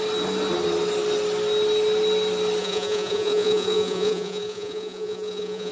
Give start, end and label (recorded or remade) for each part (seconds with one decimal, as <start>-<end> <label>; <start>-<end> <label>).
0.0-2.6 recorded; 2.6-5.7 remade